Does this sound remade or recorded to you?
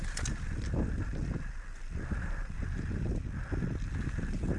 recorded